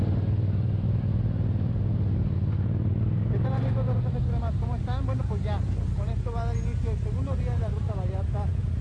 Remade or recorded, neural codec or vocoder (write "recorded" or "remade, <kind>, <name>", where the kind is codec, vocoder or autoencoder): recorded